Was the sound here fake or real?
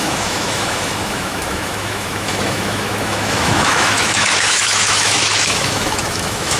fake